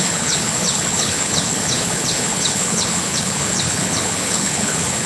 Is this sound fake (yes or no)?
yes